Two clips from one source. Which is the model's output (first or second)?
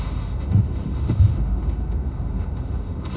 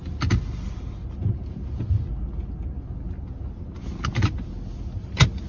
first